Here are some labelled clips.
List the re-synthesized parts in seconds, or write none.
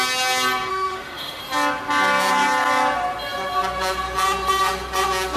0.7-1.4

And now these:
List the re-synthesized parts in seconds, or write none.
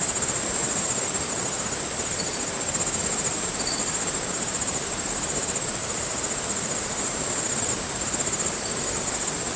0.0-0.6; 3.0-9.6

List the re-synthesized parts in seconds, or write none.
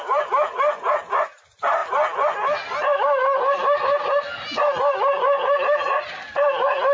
none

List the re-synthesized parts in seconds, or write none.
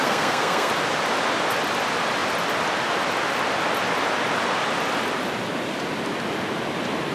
0.0-0.7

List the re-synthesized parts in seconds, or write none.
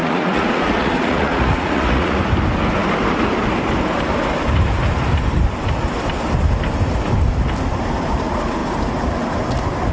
0.0-2.2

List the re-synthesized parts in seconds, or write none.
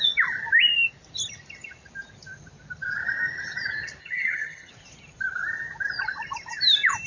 4.0-4.7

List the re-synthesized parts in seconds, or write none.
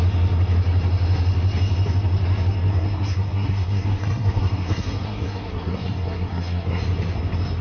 2.7-6.8